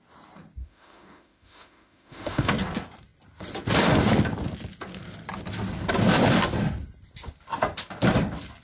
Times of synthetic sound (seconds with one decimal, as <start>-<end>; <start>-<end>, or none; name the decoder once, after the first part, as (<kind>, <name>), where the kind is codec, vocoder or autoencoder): 0.6-2.5 (autoencoder, DAC-VAE)